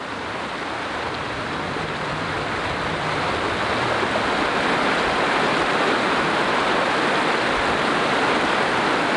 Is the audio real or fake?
real